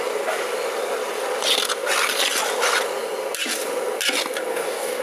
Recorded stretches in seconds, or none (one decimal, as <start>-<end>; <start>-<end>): 0.0-4.5